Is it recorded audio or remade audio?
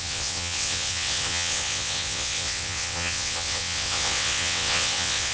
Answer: remade